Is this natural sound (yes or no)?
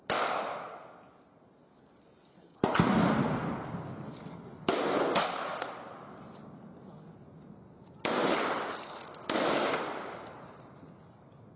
yes